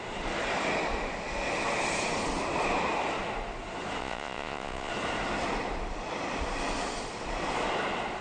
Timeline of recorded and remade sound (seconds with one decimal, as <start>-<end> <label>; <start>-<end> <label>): 0.0-4.0 recorded; 4.0-4.9 remade; 4.9-8.2 recorded